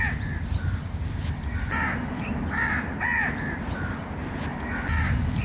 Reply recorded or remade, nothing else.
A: recorded